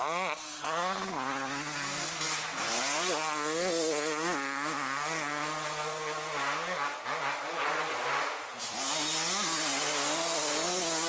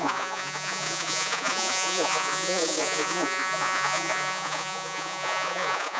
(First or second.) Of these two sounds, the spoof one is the second